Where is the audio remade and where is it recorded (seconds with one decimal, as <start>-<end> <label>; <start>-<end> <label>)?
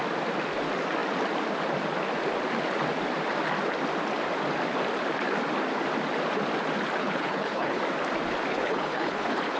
0.0-7.0 recorded; 7.0-7.8 remade; 7.8-8.5 recorded; 8.5-9.6 remade